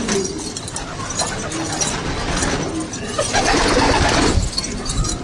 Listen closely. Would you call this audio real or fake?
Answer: real